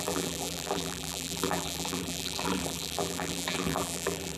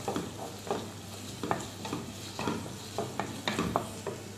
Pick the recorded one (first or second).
second